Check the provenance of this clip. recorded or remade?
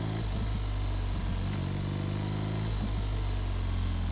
recorded